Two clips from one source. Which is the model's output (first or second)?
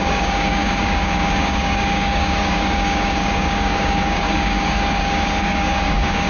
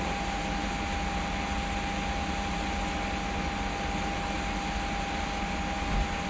first